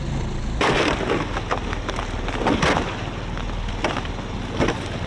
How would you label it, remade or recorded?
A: recorded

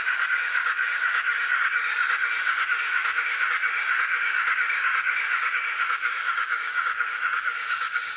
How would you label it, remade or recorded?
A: remade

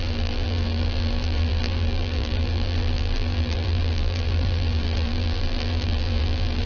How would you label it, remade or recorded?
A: remade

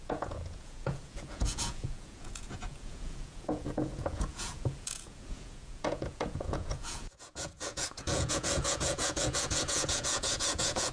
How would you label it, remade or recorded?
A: remade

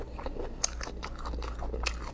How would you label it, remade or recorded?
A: recorded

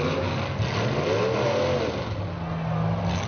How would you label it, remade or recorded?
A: recorded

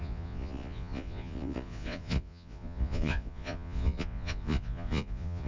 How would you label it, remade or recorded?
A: remade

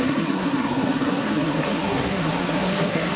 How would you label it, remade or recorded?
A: remade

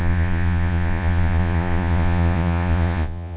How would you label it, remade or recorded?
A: remade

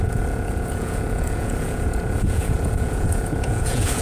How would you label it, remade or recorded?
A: remade